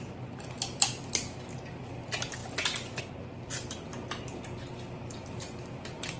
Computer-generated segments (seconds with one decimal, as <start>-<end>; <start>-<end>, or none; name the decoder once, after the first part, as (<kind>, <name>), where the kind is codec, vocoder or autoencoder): none